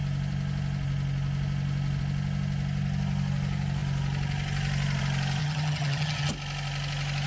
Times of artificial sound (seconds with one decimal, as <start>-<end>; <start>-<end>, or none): 5.4-6.3